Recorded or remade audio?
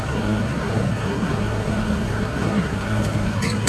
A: remade